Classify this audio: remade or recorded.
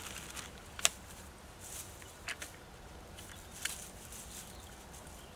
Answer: recorded